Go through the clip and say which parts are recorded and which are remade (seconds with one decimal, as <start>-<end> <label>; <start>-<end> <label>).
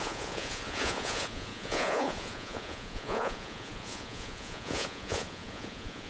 0.0-6.1 remade